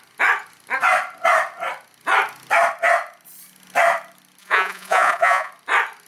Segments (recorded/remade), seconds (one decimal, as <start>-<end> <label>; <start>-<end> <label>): 0.0-4.4 recorded; 4.4-5.5 remade; 5.5-6.1 recorded